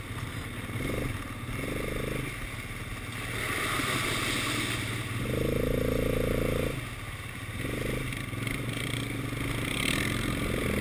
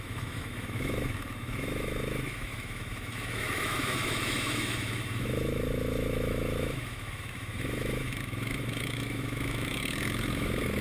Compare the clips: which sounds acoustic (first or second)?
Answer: first